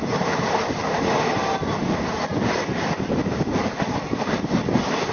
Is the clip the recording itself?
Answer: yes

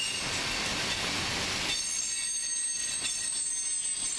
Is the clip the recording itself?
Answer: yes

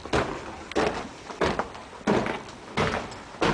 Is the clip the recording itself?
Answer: yes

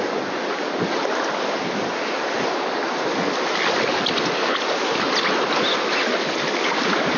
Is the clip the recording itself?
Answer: yes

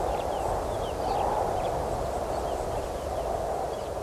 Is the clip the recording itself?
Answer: yes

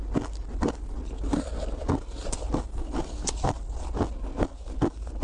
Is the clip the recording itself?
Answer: yes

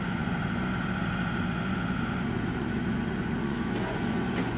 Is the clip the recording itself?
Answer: no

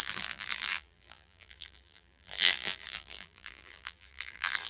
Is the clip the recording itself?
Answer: no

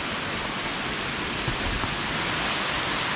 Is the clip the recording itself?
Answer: yes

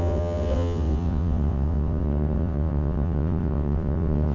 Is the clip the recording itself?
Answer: no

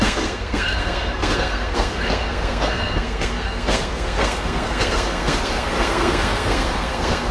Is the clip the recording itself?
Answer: no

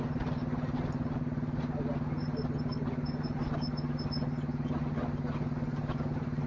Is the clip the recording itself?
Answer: yes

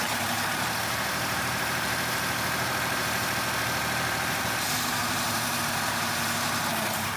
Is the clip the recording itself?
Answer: no